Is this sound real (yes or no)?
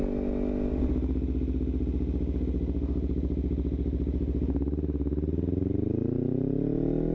yes